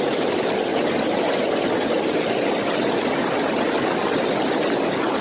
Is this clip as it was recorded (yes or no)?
yes